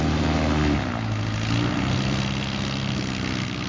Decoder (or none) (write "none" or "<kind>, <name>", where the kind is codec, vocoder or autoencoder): none